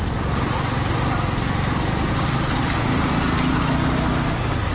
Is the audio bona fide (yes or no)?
yes